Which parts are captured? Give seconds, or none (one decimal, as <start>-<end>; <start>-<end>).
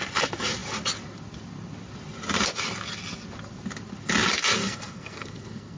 0.0-4.6